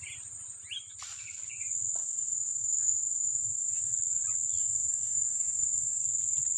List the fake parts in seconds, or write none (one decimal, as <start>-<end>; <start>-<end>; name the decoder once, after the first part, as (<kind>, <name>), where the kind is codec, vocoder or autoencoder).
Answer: 2.0-3.9 (autoencoder, DAC-VAE); 4.6-6.0